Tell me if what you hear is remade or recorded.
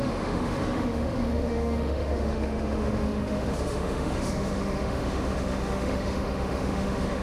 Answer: remade